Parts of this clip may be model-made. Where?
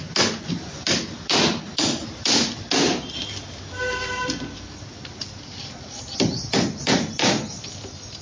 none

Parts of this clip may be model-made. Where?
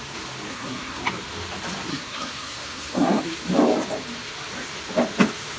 0.5-1.0 (codec, SNAC); 1.9-3.2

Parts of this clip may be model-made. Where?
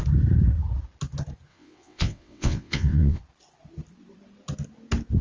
1.5-3.2 (vocoder, WaveNeXt)